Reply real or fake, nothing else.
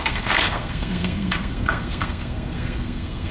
fake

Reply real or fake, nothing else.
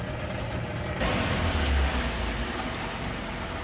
real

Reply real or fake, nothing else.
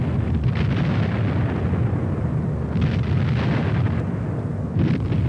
real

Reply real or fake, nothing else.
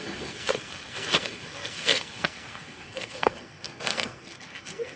fake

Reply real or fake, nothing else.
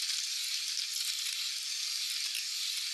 real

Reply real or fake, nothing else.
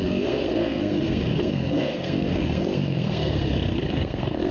fake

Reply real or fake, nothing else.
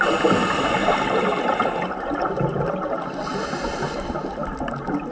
real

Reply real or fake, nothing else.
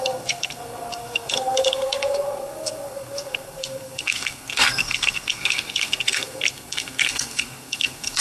fake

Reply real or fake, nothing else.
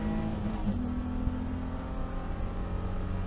real